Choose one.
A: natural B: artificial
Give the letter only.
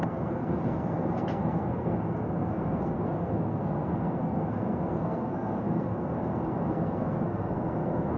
B